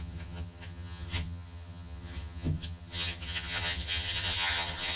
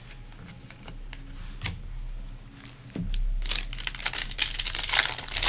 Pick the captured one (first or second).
second